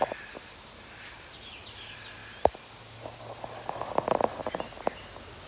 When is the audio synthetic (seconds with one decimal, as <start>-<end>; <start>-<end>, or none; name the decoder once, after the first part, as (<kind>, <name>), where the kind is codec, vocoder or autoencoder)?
none